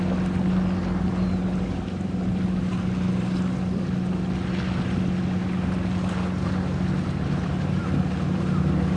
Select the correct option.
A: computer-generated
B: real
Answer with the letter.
B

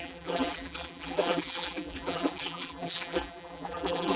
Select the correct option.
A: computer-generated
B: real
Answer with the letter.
A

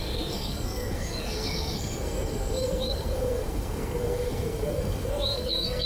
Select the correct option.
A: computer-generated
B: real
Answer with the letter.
A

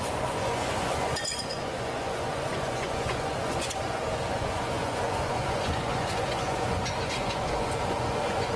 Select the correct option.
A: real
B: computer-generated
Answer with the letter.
B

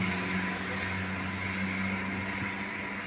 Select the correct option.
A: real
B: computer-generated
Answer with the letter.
A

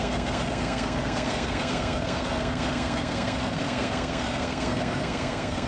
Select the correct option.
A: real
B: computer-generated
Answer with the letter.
B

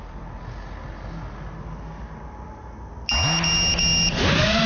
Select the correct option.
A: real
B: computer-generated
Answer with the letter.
A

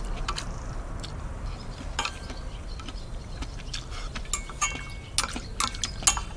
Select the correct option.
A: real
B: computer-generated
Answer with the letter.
A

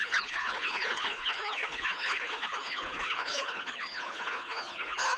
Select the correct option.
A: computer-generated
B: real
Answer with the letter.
A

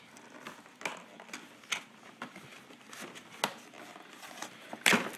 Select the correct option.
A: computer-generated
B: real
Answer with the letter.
B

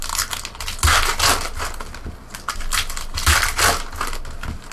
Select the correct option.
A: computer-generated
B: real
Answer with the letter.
B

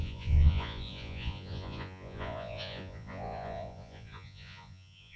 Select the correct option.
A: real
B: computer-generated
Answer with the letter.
B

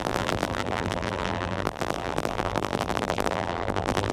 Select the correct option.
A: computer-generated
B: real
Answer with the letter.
A